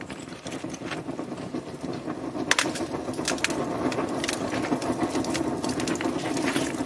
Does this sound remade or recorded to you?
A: recorded